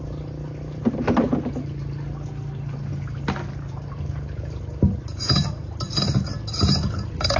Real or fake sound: real